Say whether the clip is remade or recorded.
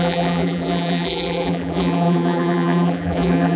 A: remade